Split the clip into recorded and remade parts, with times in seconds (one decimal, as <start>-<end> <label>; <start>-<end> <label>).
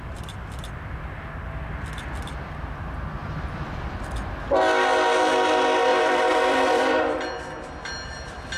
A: 0.0-3.2 recorded; 3.2-4.4 remade; 4.4-5.9 recorded; 5.9-7.3 remade; 7.3-8.6 recorded